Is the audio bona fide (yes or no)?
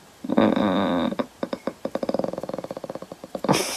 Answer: yes